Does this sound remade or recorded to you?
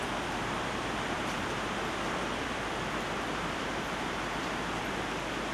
remade